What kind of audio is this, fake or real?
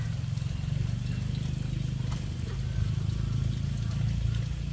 real